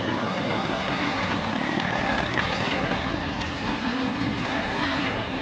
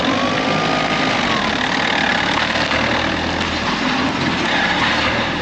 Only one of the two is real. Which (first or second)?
second